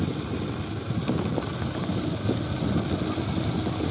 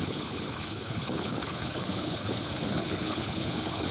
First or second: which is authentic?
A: first